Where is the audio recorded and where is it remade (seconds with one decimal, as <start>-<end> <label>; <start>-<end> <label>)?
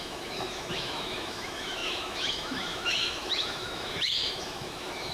0.0-5.1 remade